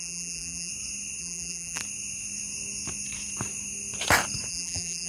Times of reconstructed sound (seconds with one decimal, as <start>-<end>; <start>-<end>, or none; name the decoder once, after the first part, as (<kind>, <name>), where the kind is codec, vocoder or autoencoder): 0.0-0.7 (vocoder, BigVGAN v2); 1.2-1.8; 4.5-5.1

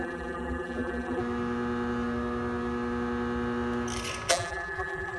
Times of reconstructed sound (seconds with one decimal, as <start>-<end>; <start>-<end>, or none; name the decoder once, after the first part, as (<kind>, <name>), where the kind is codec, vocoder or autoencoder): 0.0-1.2 (vocoder, BigVGAN v2); 4.3-5.2

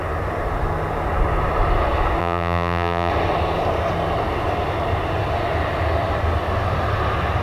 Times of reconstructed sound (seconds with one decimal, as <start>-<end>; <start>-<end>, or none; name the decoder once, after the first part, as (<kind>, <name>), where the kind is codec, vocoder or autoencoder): 2.2-3.1 (vocoder, BigVGAN v2)

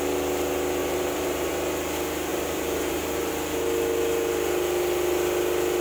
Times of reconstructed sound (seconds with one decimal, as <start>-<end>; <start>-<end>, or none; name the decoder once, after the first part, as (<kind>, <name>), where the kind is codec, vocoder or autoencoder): 0.8-1.5 (vocoder, BigVGAN v2); 2.3-3.3

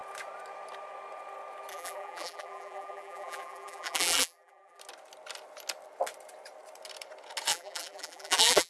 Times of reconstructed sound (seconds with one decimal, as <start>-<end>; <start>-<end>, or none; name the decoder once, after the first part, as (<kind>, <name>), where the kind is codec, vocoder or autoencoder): 1.7-4.8 (vocoder, BigVGAN v2); 7.5-8.7

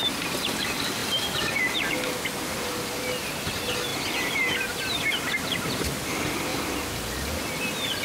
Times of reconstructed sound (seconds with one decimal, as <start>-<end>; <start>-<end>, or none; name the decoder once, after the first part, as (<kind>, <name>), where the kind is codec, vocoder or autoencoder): 3.9-4.5 (vocoder, BigVGAN v2)

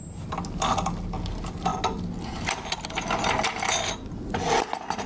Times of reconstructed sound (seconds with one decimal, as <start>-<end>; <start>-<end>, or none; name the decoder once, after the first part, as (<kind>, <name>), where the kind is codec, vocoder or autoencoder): none